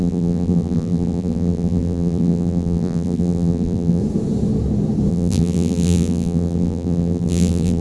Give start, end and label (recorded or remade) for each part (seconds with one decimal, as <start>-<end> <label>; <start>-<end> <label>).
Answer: 0.0-4.0 remade; 4.0-5.1 recorded; 5.1-7.8 remade